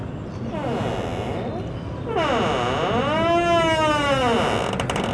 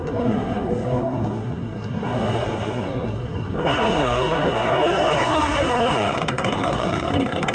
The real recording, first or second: first